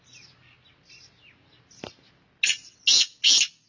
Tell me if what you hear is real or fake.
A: real